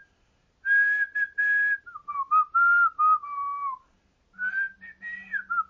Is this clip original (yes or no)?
yes